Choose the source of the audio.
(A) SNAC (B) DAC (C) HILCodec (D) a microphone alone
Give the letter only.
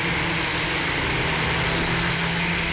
D